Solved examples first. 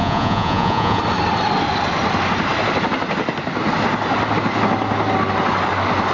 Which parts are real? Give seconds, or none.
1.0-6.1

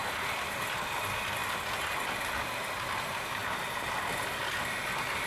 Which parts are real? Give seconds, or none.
0.0-5.3

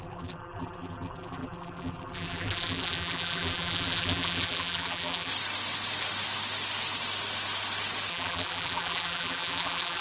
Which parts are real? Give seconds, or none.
5.3-8.1